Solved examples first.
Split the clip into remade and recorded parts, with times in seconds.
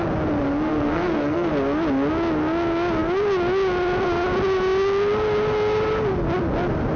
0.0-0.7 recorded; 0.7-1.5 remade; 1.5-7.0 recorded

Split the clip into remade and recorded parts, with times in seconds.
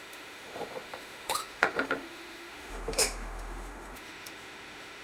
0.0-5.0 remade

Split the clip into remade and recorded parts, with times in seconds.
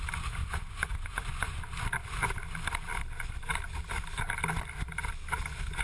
0.0-0.4 recorded; 0.4-1.6 remade; 1.6-5.8 recorded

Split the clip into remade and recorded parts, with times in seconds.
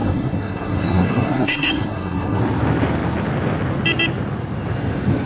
0.0-2.4 remade; 2.4-5.3 recorded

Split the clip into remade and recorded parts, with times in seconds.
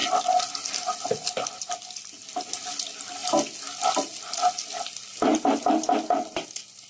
0.0-6.9 recorded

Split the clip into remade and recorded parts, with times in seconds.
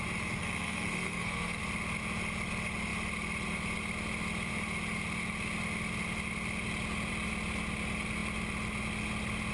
0.0-0.4 recorded; 0.4-1.6 remade; 1.6-9.5 recorded